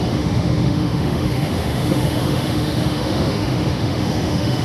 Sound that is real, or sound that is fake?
fake